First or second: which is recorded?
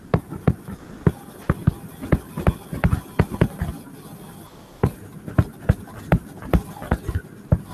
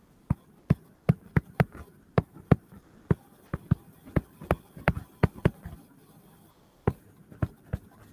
first